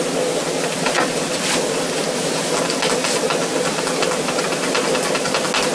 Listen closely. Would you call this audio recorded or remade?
recorded